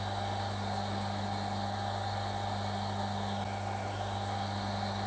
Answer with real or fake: real